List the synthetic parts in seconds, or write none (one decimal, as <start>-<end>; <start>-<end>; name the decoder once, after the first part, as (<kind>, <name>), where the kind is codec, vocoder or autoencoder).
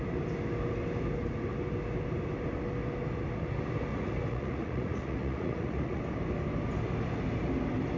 3.9-6.0 (vocoder, Vocos)